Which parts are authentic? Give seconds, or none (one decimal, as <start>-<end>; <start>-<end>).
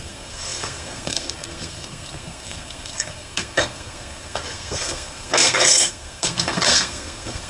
none